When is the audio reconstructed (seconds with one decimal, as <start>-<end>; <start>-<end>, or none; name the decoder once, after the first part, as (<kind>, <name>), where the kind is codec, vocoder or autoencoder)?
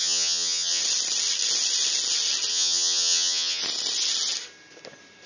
0.0-0.8 (vocoder, HiFi-GAN); 2.5-3.6